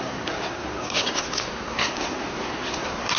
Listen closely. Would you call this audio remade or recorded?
remade